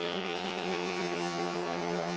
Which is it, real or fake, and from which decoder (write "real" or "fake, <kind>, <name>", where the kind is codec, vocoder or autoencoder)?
fake, vocoder, HiFi-GAN